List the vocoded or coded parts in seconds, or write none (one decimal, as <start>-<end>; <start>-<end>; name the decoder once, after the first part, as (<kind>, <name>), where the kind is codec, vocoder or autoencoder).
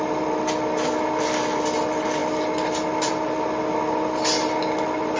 none